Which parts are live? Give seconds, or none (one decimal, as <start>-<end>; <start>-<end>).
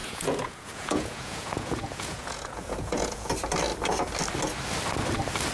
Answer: 3.3-5.5